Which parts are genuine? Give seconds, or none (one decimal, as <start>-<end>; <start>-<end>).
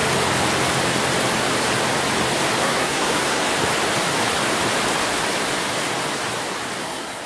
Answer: 0.0-2.6; 3.5-6.8